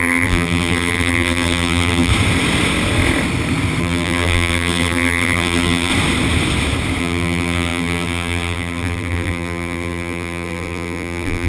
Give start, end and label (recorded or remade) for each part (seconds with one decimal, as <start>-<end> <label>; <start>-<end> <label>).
0.0-2.1 remade; 2.1-3.8 recorded; 3.8-5.9 remade; 5.9-7.0 recorded; 7.0-11.5 remade